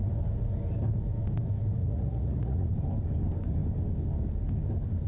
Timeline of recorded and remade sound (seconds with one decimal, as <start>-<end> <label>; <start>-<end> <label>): 0.0-1.8 recorded; 1.8-2.7 remade; 2.7-5.1 recorded